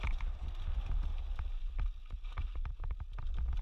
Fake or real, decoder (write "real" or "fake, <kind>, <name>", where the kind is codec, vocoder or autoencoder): real